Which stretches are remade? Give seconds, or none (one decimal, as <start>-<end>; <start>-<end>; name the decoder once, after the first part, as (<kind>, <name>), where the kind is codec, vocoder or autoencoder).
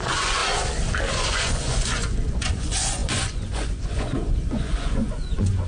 0.0-0.4 (vocoder, Vocos); 1.1-5.7